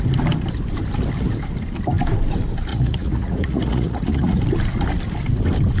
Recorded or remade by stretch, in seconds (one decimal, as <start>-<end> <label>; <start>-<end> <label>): 0.0-2.7 recorded; 2.7-4.4 remade; 4.4-5.8 recorded